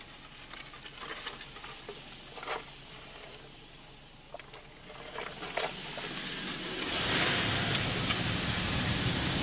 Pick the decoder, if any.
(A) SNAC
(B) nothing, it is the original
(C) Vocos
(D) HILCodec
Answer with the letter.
B